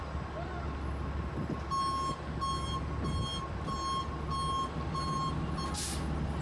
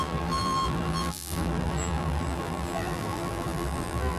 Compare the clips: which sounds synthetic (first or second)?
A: second